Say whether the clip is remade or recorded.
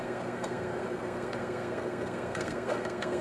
remade